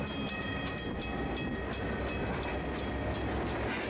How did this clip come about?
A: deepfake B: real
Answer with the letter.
B